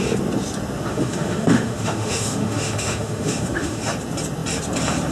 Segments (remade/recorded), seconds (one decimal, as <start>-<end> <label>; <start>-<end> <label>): 0.0-0.9 recorded; 0.9-3.8 remade; 3.8-5.1 recorded